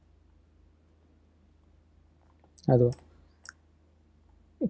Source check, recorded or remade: recorded